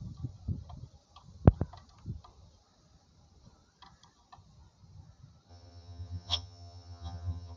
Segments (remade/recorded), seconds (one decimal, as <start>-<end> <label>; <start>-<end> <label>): 0.0-5.5 recorded; 5.5-7.6 remade